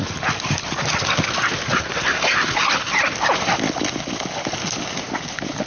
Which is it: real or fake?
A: real